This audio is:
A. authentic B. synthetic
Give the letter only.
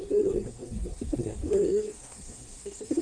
B